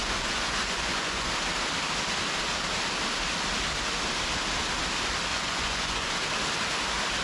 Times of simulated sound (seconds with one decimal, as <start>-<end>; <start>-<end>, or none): 0.0-1.3; 5.3-6.1